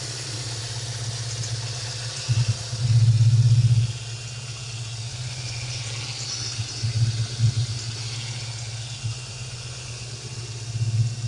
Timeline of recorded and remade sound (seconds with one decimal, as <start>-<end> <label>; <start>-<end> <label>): 0.0-5.1 recorded; 5.1-5.8 remade; 5.8-9.1 recorded; 9.1-10.1 remade; 10.1-11.3 recorded